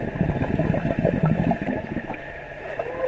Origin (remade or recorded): remade